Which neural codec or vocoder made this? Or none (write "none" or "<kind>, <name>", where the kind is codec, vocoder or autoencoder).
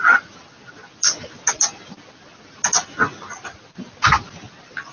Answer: none